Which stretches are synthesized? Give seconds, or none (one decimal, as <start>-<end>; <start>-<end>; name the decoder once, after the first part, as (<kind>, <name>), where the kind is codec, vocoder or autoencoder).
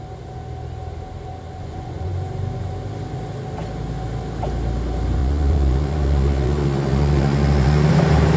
1.6-2.1 (vocoder, Vocos); 5.2-7.9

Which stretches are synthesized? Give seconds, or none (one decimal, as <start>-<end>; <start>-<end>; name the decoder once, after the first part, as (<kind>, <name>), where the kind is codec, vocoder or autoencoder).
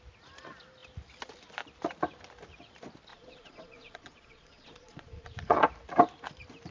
3.1-5.6 (vocoder, Vocos)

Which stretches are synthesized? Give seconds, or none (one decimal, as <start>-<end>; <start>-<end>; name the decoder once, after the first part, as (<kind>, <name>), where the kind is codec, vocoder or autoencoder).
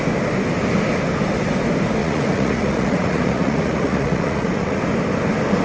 2.0-4.8 (vocoder, Vocos)